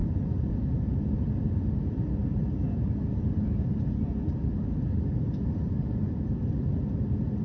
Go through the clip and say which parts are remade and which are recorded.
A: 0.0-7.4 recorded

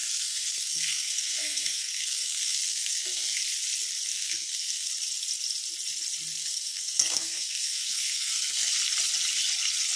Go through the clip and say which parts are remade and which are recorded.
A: 0.0-3.4 remade; 3.4-4.1 recorded; 4.1-4.9 remade; 4.9-6.4 recorded; 6.4-8.7 remade; 8.7-10.0 recorded

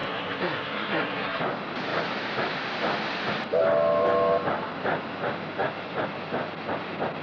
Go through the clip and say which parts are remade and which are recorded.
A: 0.0-1.4 remade; 1.4-7.2 recorded

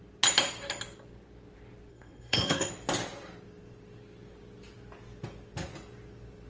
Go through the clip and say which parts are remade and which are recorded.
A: 0.0-1.9 recorded; 1.9-2.7 remade; 2.7-6.5 recorded

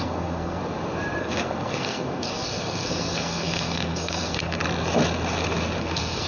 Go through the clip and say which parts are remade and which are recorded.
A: 0.0-0.6 remade; 0.6-1.2 recorded; 1.2-4.6 remade; 4.6-5.8 recorded; 5.8-6.3 remade

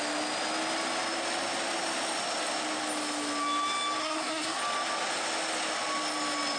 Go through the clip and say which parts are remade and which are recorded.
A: 0.0-4.0 recorded; 4.0-4.6 remade; 4.6-6.6 recorded

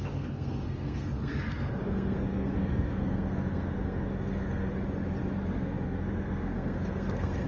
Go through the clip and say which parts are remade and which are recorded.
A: 0.0-4.7 remade; 4.7-5.4 recorded; 5.4-7.5 remade

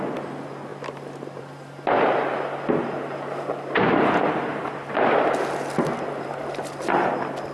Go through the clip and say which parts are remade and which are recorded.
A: 0.0-7.5 recorded